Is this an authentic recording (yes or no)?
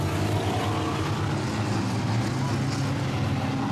yes